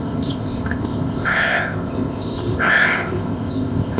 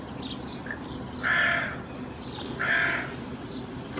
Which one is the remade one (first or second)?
first